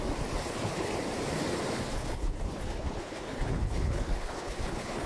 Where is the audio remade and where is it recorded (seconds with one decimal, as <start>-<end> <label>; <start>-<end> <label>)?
0.0-0.4 recorded; 0.4-0.9 remade; 0.9-1.9 recorded; 1.9-5.1 remade